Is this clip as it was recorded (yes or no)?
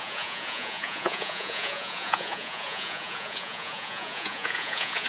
no